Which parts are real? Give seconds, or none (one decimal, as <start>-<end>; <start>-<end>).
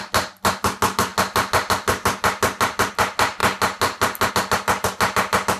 0.0-5.6